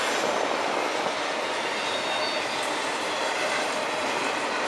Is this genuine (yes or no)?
yes